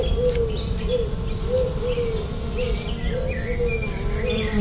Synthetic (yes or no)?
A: no